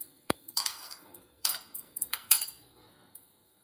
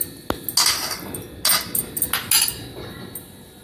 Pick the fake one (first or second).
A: first